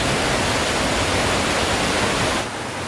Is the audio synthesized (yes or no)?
no